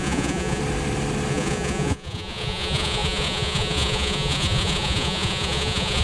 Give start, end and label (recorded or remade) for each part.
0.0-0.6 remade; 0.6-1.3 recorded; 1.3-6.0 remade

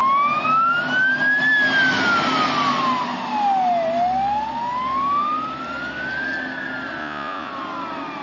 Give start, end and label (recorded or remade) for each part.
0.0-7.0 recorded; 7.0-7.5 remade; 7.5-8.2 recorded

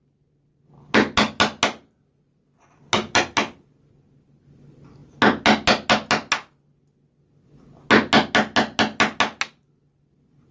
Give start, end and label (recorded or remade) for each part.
0.0-10.5 recorded

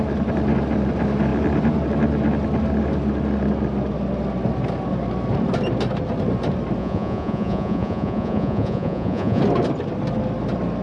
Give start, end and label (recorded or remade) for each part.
0.0-6.8 recorded; 6.8-9.4 remade; 9.4-10.8 recorded

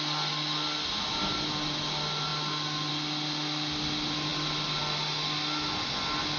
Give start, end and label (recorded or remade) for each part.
0.0-6.4 recorded

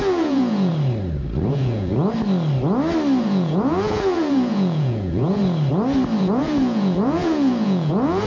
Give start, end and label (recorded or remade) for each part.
0.0-0.7 remade; 0.7-1.5 recorded; 1.5-1.9 remade; 1.9-3.2 recorded; 3.2-5.4 remade; 5.4-6.2 recorded; 6.2-8.3 remade

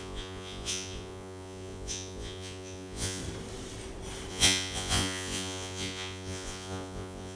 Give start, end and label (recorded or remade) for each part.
0.0-3.2 remade; 3.2-4.3 recorded; 4.3-7.4 remade